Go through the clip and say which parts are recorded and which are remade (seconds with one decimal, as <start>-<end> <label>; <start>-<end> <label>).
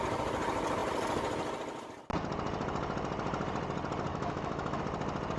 0.0-4.1 recorded; 4.1-4.8 remade; 4.8-5.4 recorded